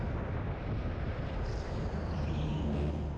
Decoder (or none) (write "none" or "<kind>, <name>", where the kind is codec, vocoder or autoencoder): none